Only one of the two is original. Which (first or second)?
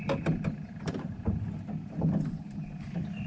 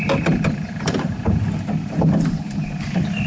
first